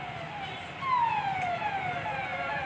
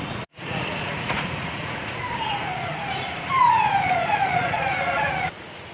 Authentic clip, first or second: first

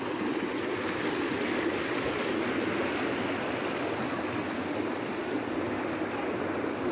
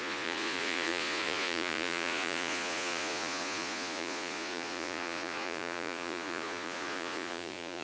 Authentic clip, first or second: first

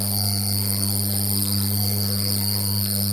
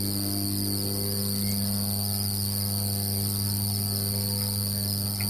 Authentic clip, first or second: second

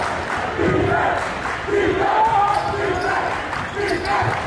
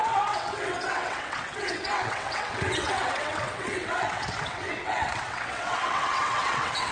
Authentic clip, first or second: first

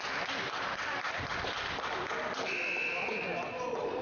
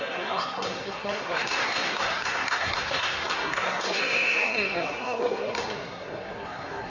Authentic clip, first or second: first